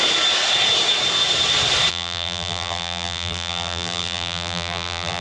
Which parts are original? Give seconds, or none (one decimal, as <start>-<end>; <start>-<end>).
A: 0.0-1.9